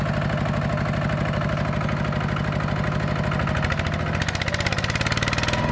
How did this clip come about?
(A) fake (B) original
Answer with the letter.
B